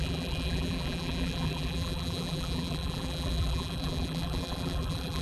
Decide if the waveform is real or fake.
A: fake